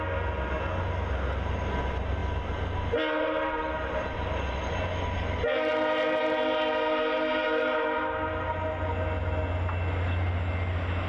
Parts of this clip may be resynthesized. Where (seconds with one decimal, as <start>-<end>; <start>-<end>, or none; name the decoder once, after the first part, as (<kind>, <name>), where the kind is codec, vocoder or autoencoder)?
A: none